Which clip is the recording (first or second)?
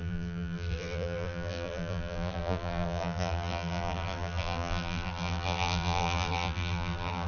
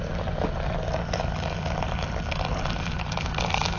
second